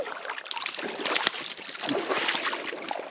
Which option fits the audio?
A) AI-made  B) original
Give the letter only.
B